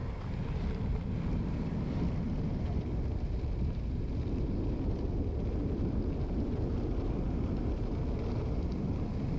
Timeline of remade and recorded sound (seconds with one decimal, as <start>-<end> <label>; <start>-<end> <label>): 0.0-9.4 recorded

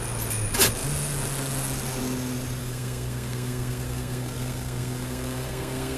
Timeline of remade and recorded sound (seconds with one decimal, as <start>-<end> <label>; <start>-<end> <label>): 0.0-2.6 recorded; 2.6-6.0 remade

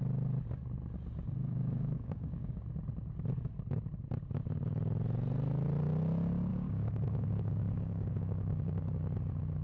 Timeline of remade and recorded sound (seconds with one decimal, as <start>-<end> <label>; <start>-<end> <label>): 0.0-1.4 recorded; 1.4-2.6 remade; 2.6-6.5 recorded; 6.5-8.9 remade; 8.9-9.6 recorded

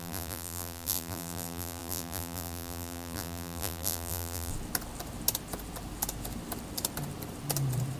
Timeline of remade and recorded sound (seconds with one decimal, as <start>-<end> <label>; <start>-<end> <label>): 0.0-4.5 remade; 4.5-8.0 recorded

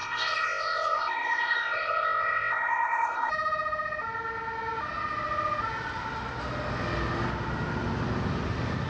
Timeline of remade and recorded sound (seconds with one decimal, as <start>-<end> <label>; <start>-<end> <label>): 0.0-3.3 remade; 3.3-8.9 recorded

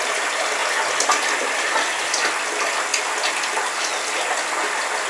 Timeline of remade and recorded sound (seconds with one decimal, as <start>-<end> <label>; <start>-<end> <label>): 0.0-5.1 recorded

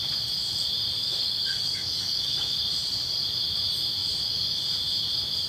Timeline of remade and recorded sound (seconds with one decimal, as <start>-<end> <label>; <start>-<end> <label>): 0.0-1.0 recorded; 1.0-2.6 remade; 2.6-5.5 recorded